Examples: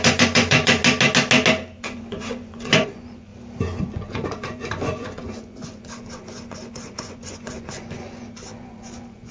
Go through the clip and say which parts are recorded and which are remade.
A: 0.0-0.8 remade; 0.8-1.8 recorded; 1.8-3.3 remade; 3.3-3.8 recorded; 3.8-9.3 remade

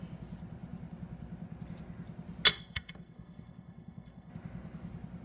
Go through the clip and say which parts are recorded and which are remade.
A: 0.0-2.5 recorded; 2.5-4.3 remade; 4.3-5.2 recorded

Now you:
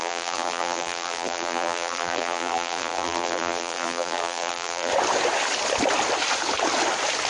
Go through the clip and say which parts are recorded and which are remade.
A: 0.0-4.9 remade; 4.9-7.3 recorded

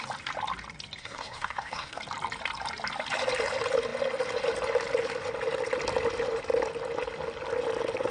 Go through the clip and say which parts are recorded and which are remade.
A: 0.0-1.0 recorded; 1.0-2.0 remade; 2.0-8.1 recorded

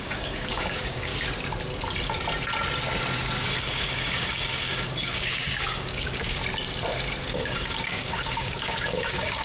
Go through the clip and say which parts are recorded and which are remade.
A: 0.0-1.1 remade; 1.1-3.6 recorded; 3.6-6.4 remade; 6.4-7.3 recorded; 7.3-9.4 remade

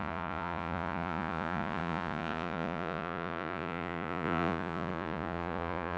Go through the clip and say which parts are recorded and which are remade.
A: 0.0-6.0 remade

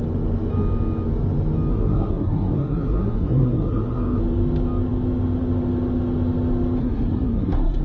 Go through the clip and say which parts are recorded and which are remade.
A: 0.0-1.7 recorded; 1.7-4.2 remade; 4.2-6.8 recorded; 6.8-7.8 remade